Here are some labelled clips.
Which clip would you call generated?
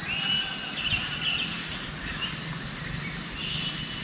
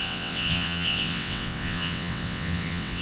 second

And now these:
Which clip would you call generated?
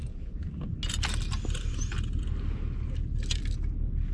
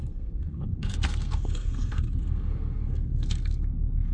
second